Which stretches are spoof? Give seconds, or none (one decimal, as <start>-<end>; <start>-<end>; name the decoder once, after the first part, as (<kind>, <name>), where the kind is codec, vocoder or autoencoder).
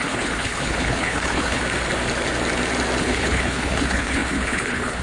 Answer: 0.0-1.6 (codec, HILCodec); 3.0-5.0